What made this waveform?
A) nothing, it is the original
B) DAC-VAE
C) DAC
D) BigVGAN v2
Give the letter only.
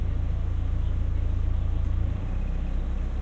A